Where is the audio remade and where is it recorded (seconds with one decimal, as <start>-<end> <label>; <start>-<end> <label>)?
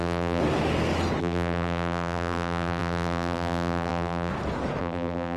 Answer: 0.0-0.4 remade; 0.4-1.2 recorded; 1.2-4.3 remade; 4.3-4.8 recorded; 4.8-5.4 remade